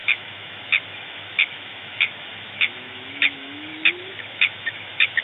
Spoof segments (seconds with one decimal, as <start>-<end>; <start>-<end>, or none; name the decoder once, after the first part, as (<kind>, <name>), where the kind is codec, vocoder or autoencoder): 0.0-3.7 (autoencoder, DAC-VAE); 4.2-5.2